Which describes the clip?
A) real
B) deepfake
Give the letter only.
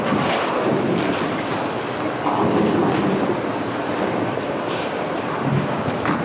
A